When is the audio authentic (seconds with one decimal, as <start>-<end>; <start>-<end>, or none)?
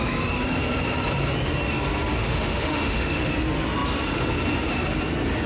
0.0-2.2; 3.3-5.5